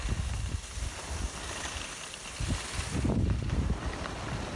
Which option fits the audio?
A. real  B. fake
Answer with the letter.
A